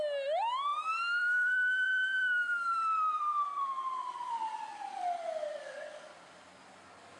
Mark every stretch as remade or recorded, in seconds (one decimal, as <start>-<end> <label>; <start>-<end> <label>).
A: 0.0-0.7 recorded; 0.7-5.0 remade; 5.0-7.2 recorded